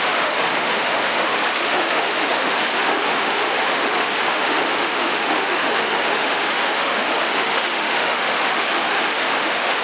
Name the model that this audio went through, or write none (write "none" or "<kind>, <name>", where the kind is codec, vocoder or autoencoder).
autoencoder, DAC-VAE